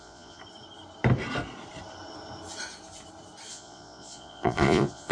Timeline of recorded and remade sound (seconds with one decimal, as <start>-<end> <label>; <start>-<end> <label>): 0.0-0.4 remade; 0.4-3.5 recorded; 3.5-5.1 remade